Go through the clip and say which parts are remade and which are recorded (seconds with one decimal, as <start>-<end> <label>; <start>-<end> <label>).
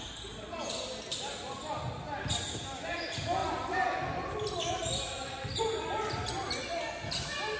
0.0-7.6 recorded